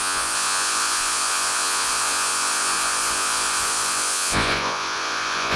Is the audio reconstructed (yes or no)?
yes